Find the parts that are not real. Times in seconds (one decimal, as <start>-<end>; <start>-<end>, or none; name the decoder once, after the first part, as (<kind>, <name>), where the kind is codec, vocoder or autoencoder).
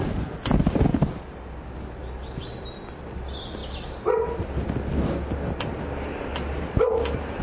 none